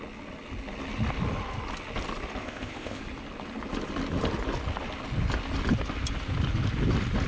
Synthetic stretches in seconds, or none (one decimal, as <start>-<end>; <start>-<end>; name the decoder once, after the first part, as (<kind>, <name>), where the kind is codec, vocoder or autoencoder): 2.4-3.0 (codec, ZipCodec)